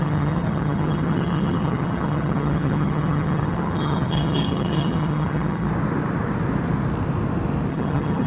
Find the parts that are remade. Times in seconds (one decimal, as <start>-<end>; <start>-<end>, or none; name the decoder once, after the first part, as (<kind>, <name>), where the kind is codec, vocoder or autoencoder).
0.0-5.7 (vocoder, HiFi-GAN); 7.7-8.3